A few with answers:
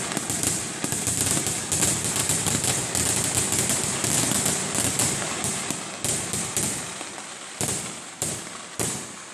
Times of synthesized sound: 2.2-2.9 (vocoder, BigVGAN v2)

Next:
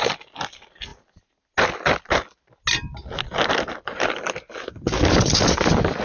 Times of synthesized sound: none

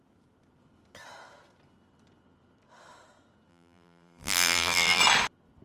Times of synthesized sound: 3.5-5.0 (vocoder, BigVGAN v2)